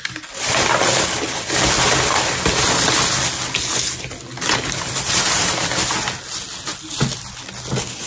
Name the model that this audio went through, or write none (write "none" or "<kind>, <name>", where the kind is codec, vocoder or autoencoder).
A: none